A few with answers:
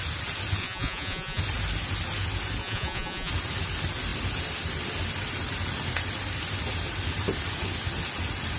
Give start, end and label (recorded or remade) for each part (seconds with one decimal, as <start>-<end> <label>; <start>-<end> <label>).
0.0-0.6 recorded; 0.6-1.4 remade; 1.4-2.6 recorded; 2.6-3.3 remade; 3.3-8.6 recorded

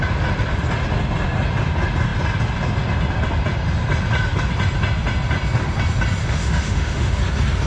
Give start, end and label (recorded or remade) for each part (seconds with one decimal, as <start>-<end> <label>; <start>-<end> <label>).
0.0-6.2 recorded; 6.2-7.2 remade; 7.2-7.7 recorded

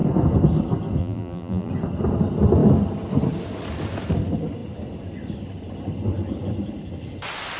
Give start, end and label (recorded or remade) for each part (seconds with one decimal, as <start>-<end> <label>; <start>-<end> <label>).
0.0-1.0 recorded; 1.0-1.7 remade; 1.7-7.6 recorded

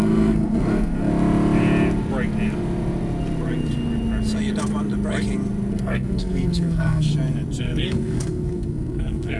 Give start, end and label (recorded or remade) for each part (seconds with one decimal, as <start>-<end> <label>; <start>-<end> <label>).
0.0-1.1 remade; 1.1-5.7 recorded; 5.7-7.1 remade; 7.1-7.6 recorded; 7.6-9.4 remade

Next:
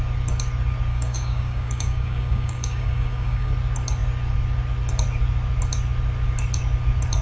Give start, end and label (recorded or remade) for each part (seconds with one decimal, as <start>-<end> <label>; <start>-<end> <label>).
0.0-0.9 recorded; 0.9-3.5 remade; 3.5-7.2 recorded